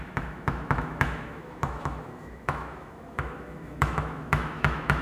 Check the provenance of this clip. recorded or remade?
remade